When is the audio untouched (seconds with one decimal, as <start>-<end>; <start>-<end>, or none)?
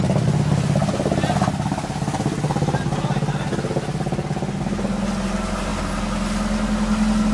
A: 0.0-7.3